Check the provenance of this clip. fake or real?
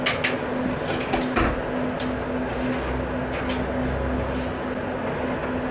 real